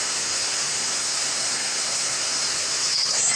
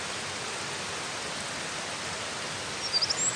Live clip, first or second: second